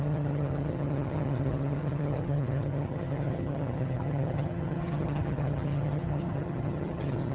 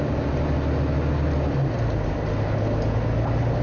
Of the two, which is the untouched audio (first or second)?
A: second